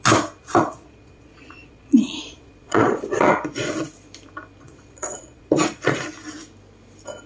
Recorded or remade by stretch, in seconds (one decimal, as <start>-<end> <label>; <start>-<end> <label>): 0.0-0.4 recorded; 0.4-3.7 remade; 3.7-4.6 recorded; 4.6-6.0 remade; 6.0-7.3 recorded